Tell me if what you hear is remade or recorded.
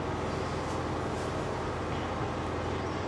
recorded